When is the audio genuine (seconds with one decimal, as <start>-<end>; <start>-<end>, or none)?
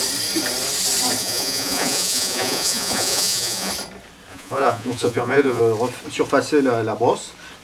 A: 0.0-1.2; 3.7-4.3; 5.6-7.6